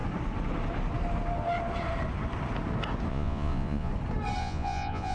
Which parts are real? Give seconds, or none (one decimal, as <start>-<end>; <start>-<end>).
0.0-3.1; 3.9-4.4